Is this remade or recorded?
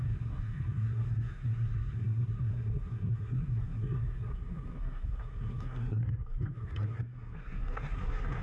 remade